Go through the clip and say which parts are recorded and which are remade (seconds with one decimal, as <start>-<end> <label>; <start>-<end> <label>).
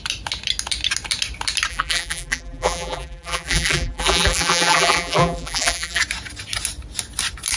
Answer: 0.0-1.7 recorded; 1.7-6.0 remade; 6.0-7.6 recorded